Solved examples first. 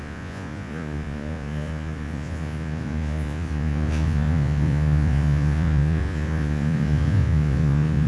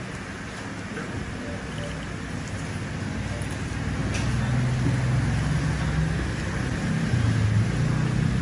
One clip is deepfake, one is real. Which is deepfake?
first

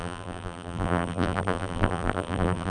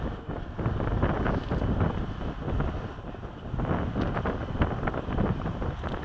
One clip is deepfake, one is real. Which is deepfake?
first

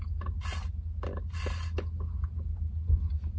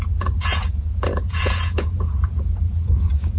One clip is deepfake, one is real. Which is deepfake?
second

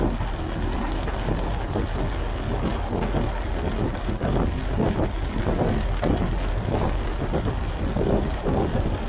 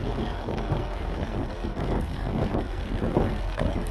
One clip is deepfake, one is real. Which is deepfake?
second